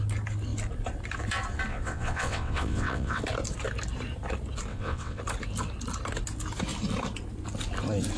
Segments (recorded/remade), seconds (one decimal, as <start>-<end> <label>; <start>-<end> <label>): 0.0-1.7 recorded; 1.7-3.2 remade; 3.2-4.7 recorded; 4.7-5.2 remade; 5.2-8.2 recorded

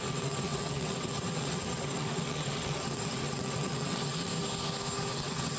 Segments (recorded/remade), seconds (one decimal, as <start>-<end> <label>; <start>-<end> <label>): 0.0-4.3 remade; 4.3-5.1 recorded; 5.1-5.6 remade